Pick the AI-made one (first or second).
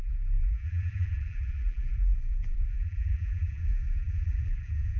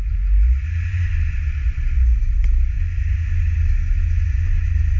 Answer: first